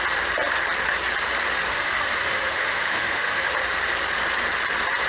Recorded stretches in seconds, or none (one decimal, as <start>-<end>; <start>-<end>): 0.0-1.7; 3.5-5.1

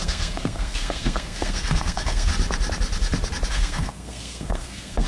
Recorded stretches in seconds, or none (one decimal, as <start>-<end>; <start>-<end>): 2.3-3.5

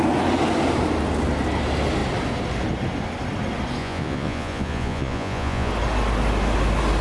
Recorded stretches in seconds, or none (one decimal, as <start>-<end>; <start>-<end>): 0.0-3.8; 5.7-7.0

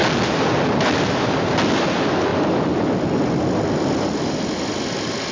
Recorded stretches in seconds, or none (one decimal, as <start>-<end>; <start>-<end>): 0.0-5.3

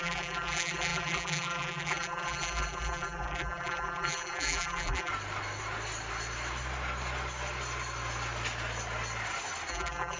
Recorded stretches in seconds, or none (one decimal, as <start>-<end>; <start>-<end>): 5.1-9.7